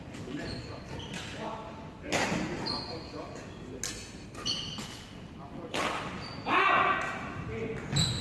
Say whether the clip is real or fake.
real